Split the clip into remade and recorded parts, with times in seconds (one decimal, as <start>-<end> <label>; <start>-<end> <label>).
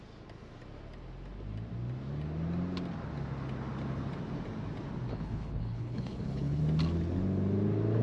0.0-5.1 recorded; 5.1-6.6 remade; 6.6-8.0 recorded